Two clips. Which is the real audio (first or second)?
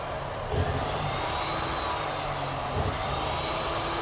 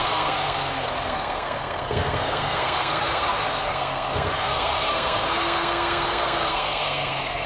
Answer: first